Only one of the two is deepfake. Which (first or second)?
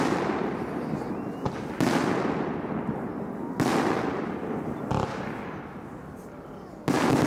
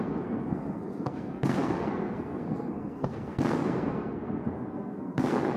second